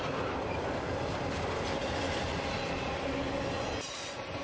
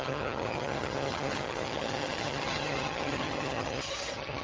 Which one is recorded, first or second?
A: first